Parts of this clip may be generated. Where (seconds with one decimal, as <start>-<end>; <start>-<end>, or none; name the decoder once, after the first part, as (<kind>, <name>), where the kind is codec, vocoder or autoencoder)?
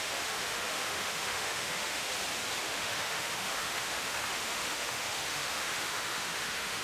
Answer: 0.0-2.1 (autoencoder, DAC-VAE); 2.6-6.8